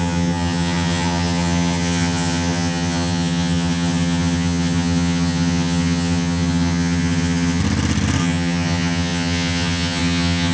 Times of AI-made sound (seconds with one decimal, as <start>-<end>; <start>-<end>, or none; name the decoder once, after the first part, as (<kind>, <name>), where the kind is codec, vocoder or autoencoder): 0.0-7.6 (vocoder, HiFi-GAN); 8.2-10.5